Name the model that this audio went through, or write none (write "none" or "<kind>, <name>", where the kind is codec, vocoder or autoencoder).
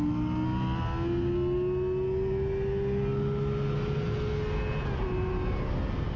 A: none